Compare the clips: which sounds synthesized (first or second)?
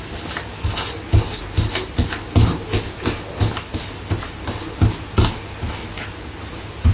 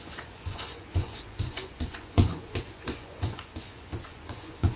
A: second